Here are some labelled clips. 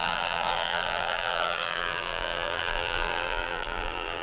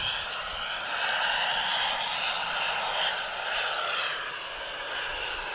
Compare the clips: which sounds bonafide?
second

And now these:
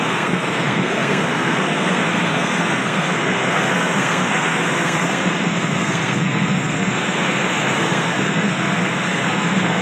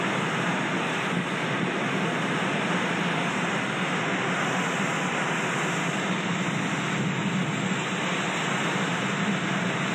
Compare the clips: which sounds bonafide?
second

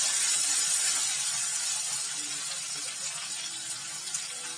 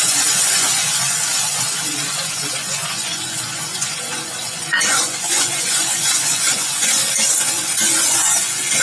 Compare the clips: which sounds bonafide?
first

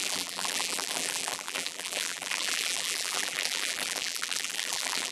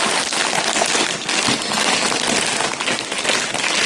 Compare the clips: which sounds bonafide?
second